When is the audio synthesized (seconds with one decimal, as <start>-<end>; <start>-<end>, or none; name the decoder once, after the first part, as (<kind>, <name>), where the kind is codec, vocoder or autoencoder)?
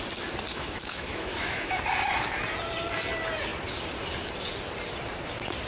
0.5-1.8 (autoencoder, DAC-VAE)